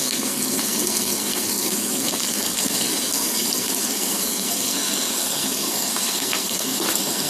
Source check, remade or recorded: remade